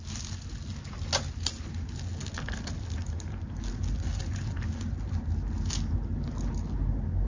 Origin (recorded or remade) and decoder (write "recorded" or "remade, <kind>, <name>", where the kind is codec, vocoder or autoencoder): recorded